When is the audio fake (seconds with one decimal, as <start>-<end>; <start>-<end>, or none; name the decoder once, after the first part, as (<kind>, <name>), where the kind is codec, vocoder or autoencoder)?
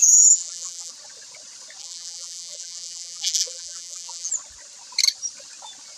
0.0-0.9 (vocoder, BigVGAN v2); 1.8-4.3